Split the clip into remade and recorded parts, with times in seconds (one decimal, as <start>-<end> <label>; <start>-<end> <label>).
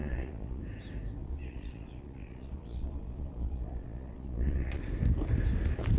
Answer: 0.0-0.6 remade; 0.6-1.2 recorded; 1.2-4.8 remade; 4.8-6.0 recorded